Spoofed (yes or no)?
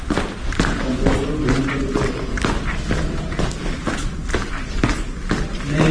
no